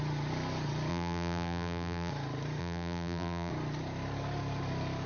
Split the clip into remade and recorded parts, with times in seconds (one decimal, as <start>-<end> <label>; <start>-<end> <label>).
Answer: 0.0-0.9 recorded; 0.9-2.1 remade; 2.1-2.6 recorded; 2.6-3.5 remade; 3.5-5.1 recorded